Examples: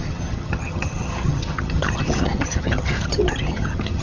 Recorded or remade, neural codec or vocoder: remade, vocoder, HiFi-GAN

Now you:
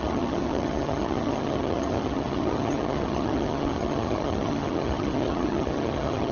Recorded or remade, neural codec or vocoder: remade, vocoder, HiFi-GAN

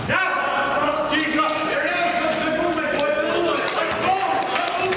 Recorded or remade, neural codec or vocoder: recorded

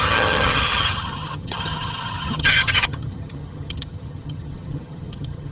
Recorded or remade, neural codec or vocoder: remade, vocoder, HiFi-GAN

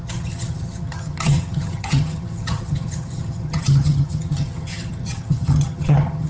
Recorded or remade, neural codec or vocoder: remade, vocoder, HiFi-GAN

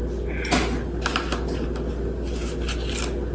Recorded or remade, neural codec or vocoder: recorded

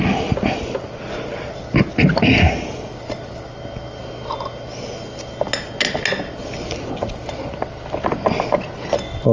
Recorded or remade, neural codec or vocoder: recorded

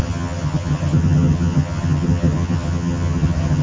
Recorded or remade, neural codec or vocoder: remade, vocoder, HiFi-GAN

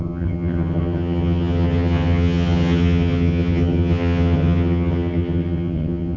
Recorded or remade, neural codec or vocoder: remade, vocoder, HiFi-GAN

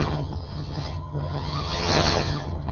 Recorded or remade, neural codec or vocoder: remade, vocoder, HiFi-GAN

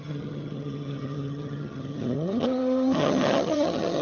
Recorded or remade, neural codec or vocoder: remade, vocoder, HiFi-GAN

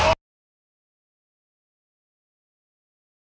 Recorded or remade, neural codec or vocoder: recorded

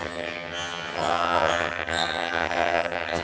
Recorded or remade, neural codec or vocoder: remade, vocoder, HiFi-GAN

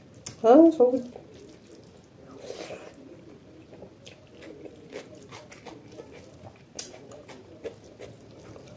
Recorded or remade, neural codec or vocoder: recorded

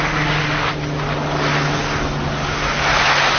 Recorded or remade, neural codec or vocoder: recorded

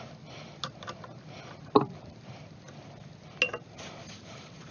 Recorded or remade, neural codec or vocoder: recorded